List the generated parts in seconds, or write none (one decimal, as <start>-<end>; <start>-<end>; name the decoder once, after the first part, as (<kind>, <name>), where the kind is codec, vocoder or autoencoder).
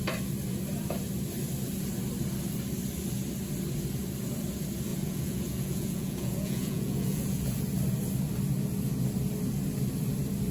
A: 4.9-7.6 (vocoder, Vocos)